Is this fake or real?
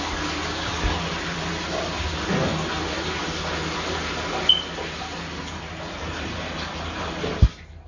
real